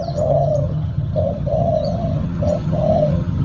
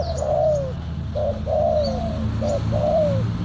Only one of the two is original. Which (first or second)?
second